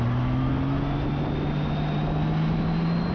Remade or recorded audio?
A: recorded